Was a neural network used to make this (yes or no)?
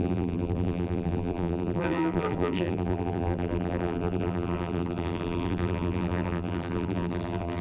yes